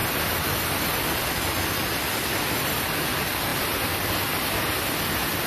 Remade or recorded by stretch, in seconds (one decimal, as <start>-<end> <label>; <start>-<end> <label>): 0.0-5.5 recorded